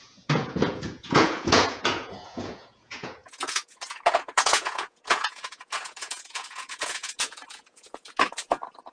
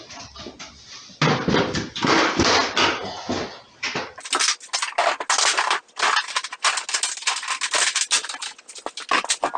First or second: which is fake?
first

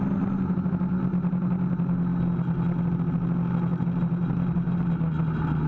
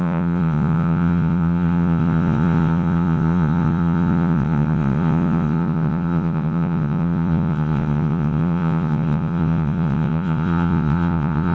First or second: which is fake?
second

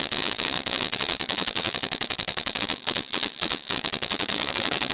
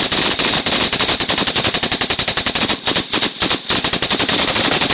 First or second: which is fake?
first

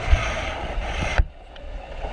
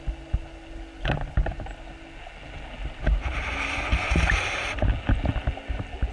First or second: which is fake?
first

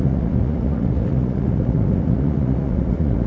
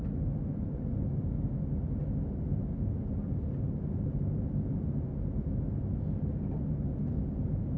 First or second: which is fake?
first